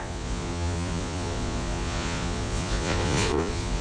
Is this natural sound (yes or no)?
no